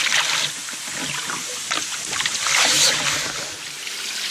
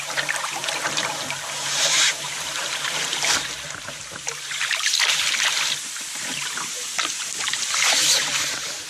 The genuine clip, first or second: first